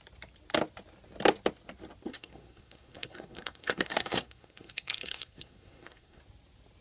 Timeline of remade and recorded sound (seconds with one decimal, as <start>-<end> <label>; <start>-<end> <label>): 0.0-2.1 recorded; 2.1-6.2 remade; 6.2-6.8 recorded